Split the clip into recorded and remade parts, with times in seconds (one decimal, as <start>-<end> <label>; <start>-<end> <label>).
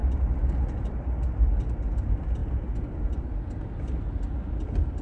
0.0-5.0 recorded